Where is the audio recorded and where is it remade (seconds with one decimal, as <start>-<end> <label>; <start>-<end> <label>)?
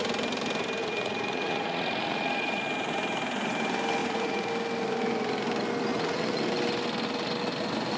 0.0-0.8 recorded; 0.8-2.6 remade; 2.6-4.0 recorded; 4.0-4.5 remade; 4.5-5.9 recorded; 5.9-6.5 remade; 6.5-8.0 recorded